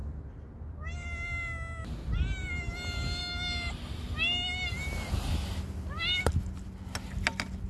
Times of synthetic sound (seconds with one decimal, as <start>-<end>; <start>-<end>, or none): none